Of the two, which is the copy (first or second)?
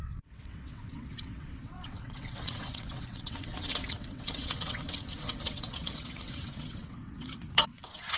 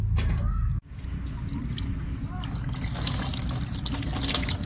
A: first